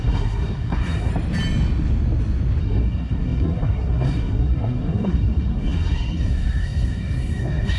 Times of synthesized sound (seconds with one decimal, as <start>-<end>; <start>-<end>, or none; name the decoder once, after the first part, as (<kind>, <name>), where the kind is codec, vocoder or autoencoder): 0.0-1.1 (codec, SNAC); 2.6-7.8